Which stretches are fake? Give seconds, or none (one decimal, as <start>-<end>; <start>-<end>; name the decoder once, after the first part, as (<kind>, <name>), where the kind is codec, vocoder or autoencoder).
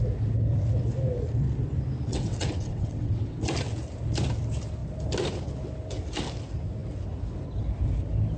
2.1-3.4 (vocoder, WaveNeXt)